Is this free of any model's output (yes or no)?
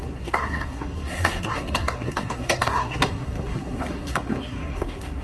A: no